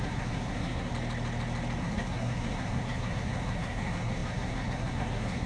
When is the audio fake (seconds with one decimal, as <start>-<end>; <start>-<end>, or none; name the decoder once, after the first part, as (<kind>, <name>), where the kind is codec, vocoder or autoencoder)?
0.0-0.9 (codec, SNAC); 1.8-5.5